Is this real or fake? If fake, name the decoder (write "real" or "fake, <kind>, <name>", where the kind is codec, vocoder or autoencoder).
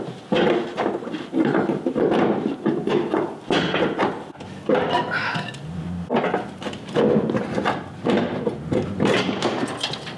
real